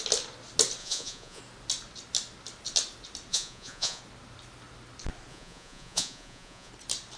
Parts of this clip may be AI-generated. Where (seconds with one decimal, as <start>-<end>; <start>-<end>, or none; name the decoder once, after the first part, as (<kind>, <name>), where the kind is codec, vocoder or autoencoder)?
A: 0.8-1.4 (vocoder, Vocos); 3.3-4.0; 5.3-6.7